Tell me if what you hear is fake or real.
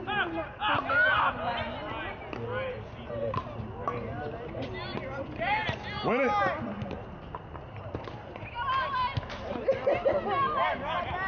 real